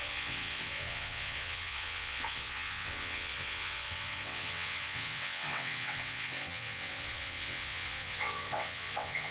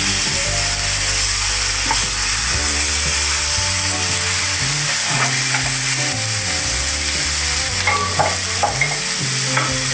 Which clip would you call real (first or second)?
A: second